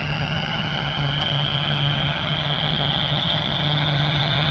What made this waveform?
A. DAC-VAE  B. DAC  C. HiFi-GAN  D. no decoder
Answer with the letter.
C